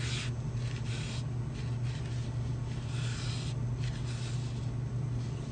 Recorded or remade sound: recorded